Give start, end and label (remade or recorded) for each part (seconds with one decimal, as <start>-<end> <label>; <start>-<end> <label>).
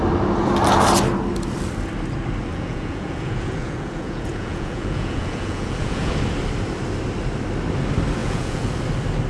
0.0-2.5 recorded; 2.5-6.1 remade; 6.1-8.2 recorded; 8.2-8.7 remade; 8.7-9.3 recorded